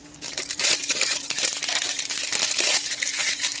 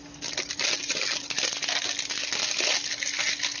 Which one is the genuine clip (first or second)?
second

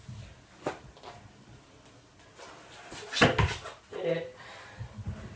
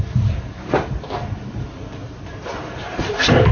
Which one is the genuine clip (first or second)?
first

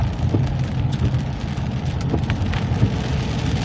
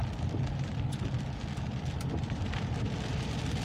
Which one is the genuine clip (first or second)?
first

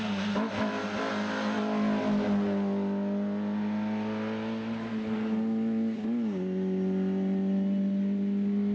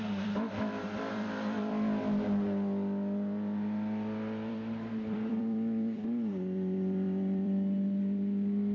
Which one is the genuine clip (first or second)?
first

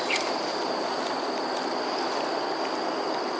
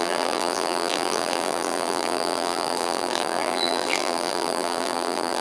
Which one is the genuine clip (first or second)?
first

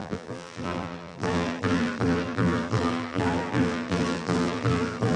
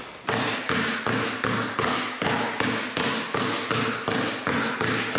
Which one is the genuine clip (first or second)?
second